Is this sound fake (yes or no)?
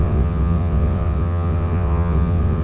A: yes